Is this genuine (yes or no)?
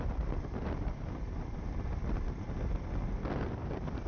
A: yes